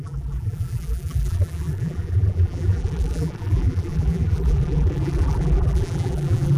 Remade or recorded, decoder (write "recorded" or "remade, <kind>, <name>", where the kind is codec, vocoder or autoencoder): remade, vocoder, BigVGAN v2